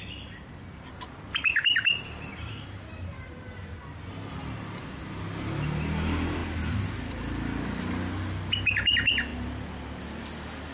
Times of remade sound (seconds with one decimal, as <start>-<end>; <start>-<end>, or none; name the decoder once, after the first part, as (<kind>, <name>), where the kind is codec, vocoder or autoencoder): 9.3-10.0 (vocoder, BigVGAN v2)